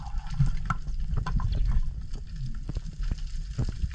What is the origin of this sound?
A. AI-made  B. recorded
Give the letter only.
B